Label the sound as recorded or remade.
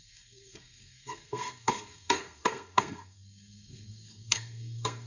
remade